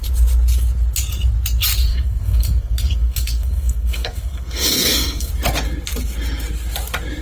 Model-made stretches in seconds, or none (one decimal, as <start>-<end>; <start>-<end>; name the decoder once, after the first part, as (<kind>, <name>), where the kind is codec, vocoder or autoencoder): 1.9-5.3 (codec, SNAC)